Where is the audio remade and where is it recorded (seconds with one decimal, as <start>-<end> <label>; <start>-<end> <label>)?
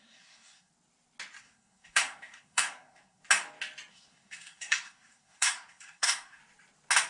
0.0-0.7 remade; 0.7-1.4 recorded; 1.4-3.2 remade; 3.2-3.9 recorded; 3.9-6.4 remade; 6.4-7.1 recorded